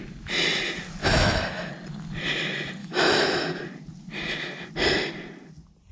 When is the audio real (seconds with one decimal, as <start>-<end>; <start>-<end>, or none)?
0.0-1.0; 1.7-2.8; 3.6-5.9